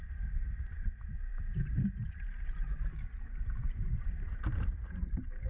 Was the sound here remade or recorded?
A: remade